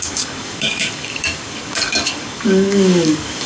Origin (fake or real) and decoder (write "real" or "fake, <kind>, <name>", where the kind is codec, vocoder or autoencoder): fake, codec, DAC